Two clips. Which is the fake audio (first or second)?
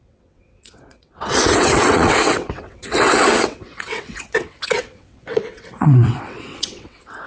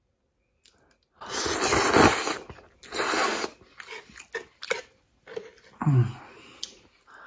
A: first